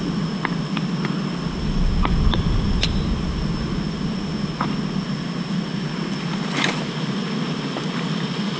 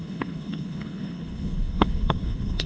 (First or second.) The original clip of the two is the first